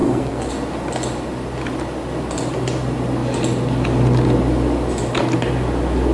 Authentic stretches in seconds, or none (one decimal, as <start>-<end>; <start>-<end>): 0.5-6.1